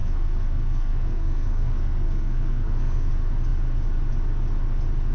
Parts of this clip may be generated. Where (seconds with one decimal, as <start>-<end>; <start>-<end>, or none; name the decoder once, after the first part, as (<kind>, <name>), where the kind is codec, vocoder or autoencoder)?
0.0-3.1 (codec, SNAC)